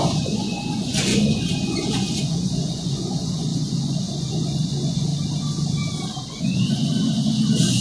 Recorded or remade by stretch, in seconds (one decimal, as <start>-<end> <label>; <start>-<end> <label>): 0.0-5.1 remade; 5.1-6.3 recorded; 6.3-7.8 remade